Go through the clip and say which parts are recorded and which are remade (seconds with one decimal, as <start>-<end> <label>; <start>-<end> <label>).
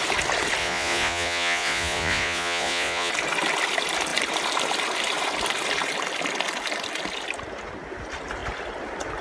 0.0-0.6 recorded; 0.6-3.1 remade; 3.1-9.2 recorded